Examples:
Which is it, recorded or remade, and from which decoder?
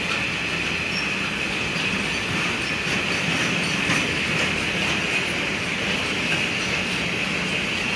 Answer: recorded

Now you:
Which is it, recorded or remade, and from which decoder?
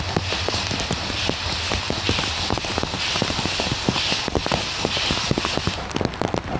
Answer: recorded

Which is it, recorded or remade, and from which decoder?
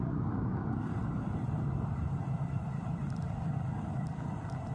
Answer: recorded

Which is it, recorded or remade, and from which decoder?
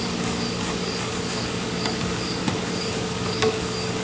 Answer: remade, codec, DAC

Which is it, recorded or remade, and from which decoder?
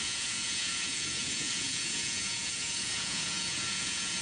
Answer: remade, vocoder, Vocos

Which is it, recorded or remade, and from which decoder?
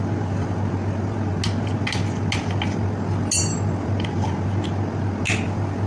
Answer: recorded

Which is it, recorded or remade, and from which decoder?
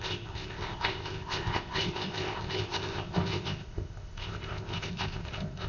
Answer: remade, codec, ZipCodec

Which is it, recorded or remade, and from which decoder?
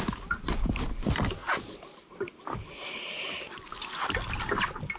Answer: recorded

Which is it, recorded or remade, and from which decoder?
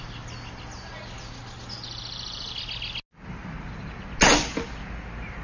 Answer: recorded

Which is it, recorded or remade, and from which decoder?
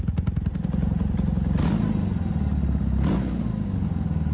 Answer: recorded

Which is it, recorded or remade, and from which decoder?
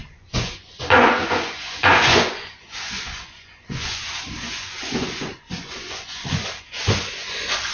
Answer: remade, vocoder, Vocos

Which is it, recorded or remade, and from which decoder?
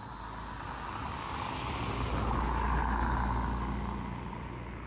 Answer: recorded